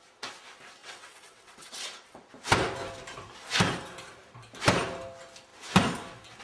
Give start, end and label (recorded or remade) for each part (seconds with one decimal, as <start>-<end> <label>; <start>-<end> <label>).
0.0-0.8 recorded; 0.8-2.3 remade; 2.3-6.4 recorded